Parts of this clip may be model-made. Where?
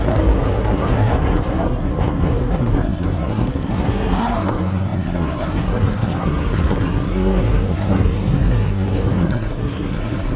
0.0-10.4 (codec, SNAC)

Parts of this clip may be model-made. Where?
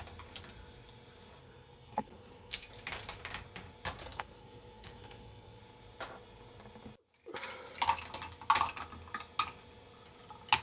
1.4-2.7 (codec, SNAC); 4.0-5.6